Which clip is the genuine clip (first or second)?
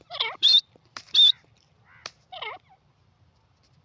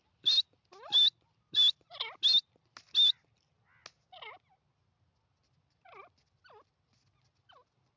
second